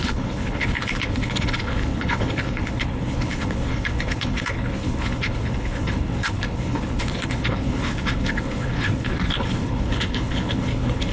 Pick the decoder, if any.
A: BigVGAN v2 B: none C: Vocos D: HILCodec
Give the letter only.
D